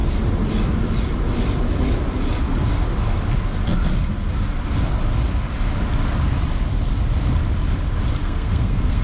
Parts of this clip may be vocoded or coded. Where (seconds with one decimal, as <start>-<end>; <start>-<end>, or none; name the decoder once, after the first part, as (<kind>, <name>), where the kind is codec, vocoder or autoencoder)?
8.2-9.0 (codec, SNAC)